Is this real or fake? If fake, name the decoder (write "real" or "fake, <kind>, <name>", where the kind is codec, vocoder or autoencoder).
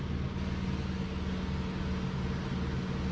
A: real